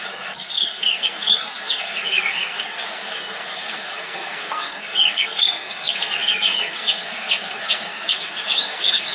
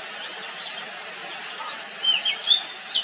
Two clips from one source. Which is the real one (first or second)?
second